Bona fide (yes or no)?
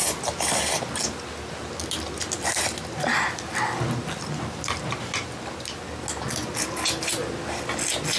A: yes